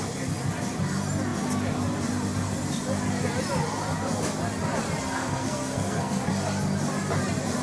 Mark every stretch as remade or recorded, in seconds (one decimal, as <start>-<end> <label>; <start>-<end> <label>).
0.0-5.2 recorded; 5.2-6.3 remade; 6.3-7.6 recorded